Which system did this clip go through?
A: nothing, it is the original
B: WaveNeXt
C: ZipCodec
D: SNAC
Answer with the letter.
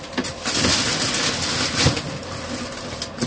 A